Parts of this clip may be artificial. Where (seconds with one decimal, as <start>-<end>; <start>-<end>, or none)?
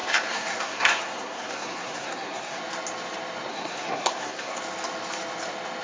0.0-2.6; 3.5-4.6